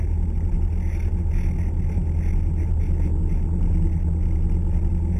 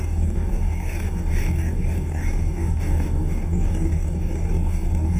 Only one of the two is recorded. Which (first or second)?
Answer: first